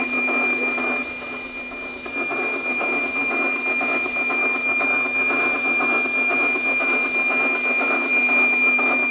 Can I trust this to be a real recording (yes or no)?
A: no